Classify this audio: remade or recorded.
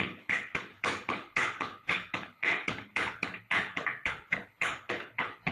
remade